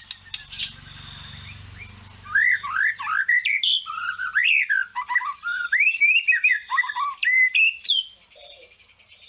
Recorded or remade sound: recorded